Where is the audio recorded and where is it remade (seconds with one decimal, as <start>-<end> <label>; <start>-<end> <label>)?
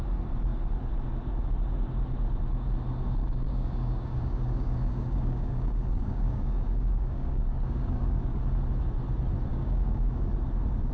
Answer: 0.0-3.2 recorded; 3.2-8.4 remade; 8.4-9.5 recorded; 9.5-10.3 remade; 10.3-10.9 recorded